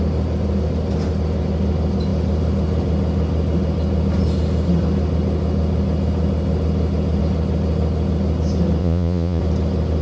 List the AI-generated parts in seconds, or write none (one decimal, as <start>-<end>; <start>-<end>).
8.8-9.4